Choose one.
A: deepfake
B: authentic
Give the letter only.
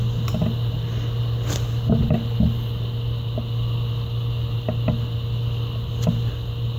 A